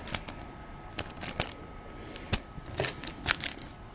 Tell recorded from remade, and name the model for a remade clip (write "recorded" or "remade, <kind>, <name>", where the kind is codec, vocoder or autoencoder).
recorded